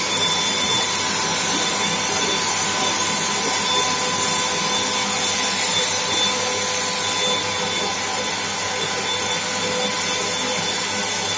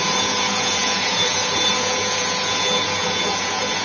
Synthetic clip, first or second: second